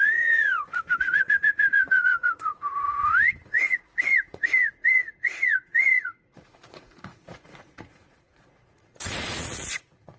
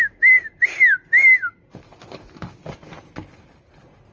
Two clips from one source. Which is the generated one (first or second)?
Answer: first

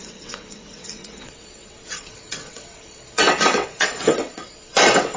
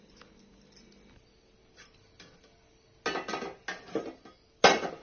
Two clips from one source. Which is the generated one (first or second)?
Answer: first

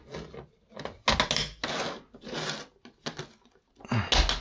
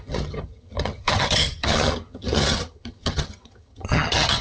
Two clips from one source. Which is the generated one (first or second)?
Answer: second